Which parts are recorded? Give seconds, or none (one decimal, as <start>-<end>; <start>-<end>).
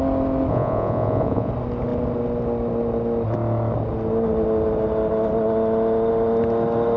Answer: 0.0-0.5; 1.5-7.0